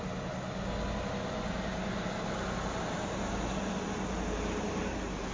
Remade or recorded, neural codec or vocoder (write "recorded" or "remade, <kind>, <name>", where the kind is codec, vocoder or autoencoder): recorded